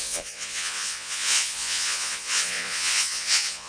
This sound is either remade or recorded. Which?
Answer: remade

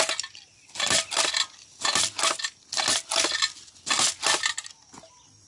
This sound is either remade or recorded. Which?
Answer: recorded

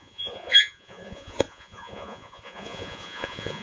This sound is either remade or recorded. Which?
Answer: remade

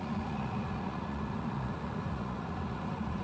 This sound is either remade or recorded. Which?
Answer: remade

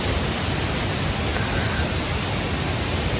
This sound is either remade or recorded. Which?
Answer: recorded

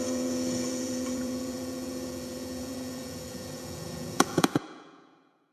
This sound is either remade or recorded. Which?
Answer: remade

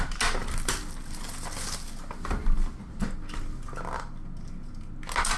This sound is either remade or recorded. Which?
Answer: recorded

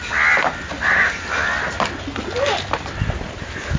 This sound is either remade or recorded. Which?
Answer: recorded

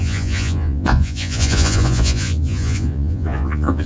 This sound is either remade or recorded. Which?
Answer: remade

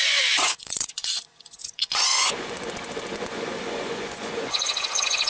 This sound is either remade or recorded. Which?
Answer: remade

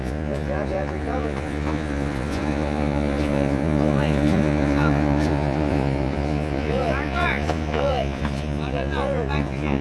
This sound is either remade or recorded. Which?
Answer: remade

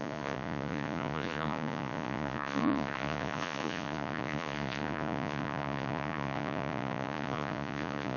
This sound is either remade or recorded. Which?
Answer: remade